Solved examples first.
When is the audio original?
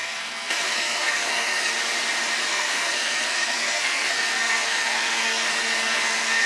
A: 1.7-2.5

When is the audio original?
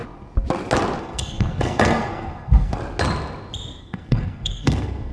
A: 0.0-1.0; 2.8-3.8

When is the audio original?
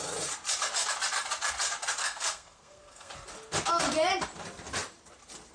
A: 0.0-2.0; 3.1-5.5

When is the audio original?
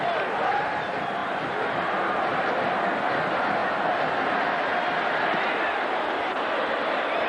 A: 0.0-7.3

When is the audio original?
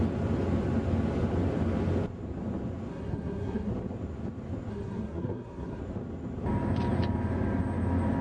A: 0.0-2.9; 3.7-4.7; 5.8-8.2